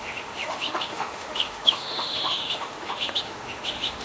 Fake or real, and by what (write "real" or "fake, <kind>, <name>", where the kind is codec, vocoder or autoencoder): fake, autoencoder, DAC-VAE